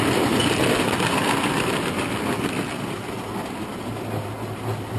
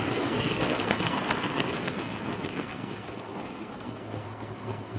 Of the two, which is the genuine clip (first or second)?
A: first